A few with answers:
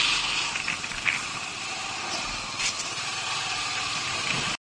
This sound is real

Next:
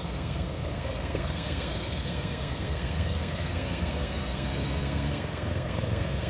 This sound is fake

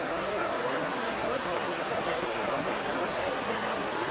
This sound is fake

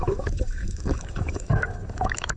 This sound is fake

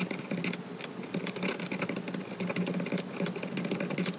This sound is real